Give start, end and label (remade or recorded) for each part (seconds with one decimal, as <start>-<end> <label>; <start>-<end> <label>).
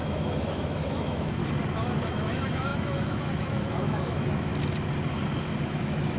0.0-1.4 remade; 1.4-2.0 recorded; 2.0-4.5 remade; 4.5-5.7 recorded; 5.7-6.2 remade